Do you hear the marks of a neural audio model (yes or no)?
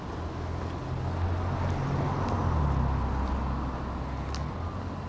no